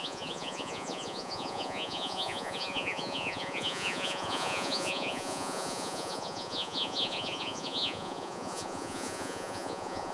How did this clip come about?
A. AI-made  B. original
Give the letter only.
A